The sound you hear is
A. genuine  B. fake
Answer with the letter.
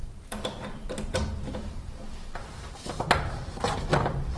B